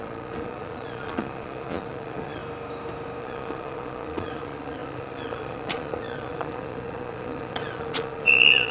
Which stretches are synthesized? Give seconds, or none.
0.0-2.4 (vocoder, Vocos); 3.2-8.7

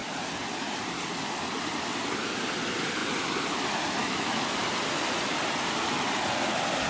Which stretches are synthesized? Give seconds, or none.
4.0-4.6 (autoencoder, DAC-VAE)

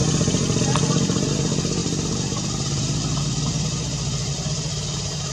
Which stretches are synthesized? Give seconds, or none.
1.8-5.3 (vocoder, BigVGAN v2)